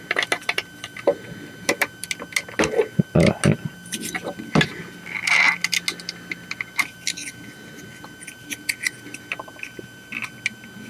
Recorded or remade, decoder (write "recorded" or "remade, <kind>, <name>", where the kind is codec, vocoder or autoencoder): recorded